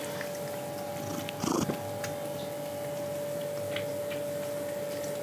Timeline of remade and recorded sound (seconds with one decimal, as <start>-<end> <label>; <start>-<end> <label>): 0.0-5.2 recorded